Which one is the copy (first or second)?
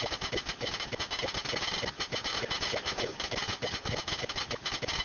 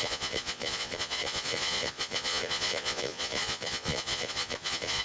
second